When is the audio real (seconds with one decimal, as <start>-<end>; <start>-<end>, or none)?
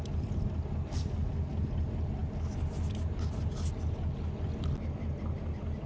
0.0-5.9